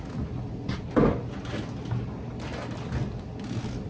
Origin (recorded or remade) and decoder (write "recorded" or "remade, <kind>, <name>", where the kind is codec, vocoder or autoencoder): recorded